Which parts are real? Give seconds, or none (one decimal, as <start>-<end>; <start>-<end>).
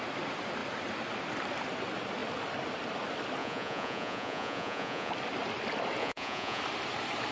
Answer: 0.0-3.4; 5.1-6.0; 6.6-7.3